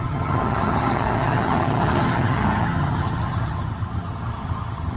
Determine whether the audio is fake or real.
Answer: fake